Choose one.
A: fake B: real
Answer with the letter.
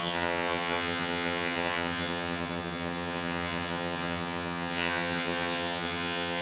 A